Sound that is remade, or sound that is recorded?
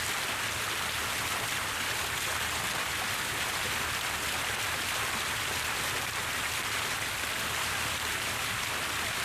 recorded